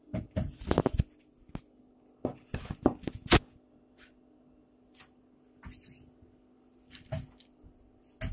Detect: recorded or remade recorded